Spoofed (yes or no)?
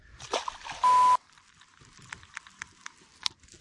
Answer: no